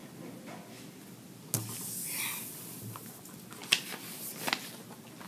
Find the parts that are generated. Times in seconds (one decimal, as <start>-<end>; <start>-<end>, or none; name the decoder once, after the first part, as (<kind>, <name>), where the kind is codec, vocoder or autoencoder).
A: none